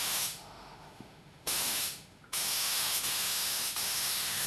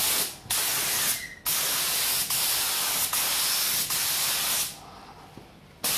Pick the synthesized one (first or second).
first